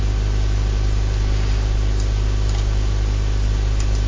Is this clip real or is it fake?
real